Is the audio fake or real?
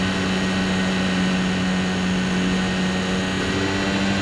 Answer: real